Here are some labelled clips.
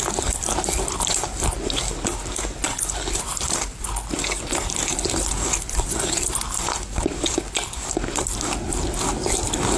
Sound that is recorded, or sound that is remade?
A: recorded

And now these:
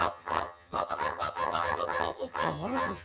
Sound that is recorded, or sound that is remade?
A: remade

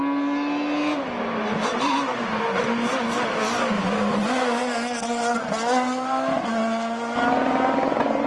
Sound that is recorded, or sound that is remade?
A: recorded